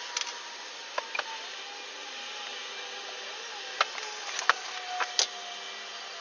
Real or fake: real